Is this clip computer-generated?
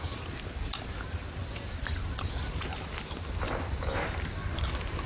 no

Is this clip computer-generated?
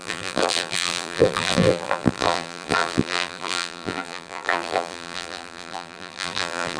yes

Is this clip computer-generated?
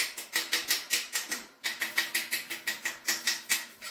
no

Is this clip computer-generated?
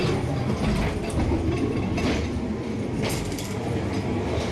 no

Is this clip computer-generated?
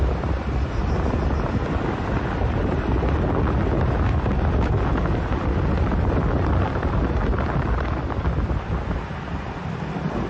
no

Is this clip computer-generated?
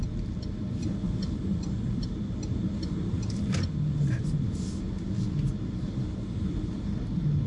no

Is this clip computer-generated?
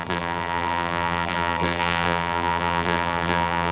yes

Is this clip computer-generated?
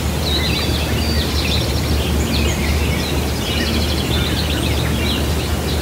no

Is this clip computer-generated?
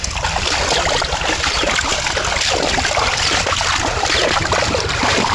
no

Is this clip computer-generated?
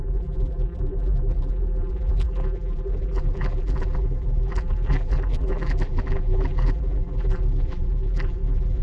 yes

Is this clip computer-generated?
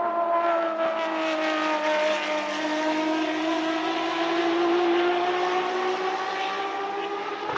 no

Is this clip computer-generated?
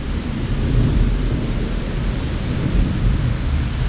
yes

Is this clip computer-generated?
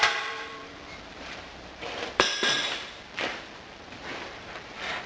yes